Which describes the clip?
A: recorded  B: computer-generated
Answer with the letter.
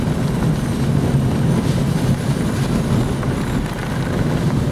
A